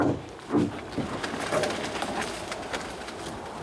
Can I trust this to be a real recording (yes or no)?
yes